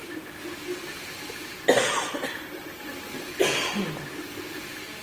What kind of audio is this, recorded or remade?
recorded